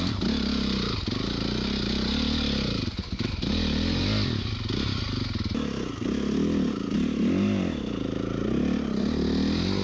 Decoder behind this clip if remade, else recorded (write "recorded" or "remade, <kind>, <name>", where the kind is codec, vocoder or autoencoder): recorded